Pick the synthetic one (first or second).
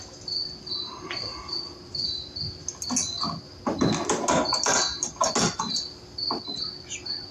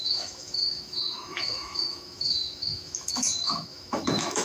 second